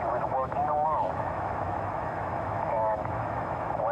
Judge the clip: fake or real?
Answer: fake